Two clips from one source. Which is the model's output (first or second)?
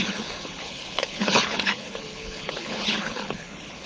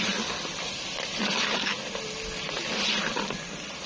first